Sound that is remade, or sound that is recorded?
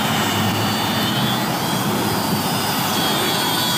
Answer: remade